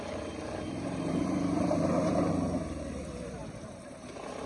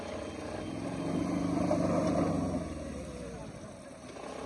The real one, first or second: second